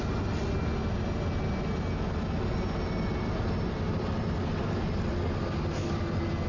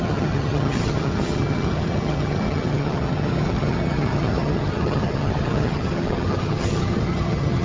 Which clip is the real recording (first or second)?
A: first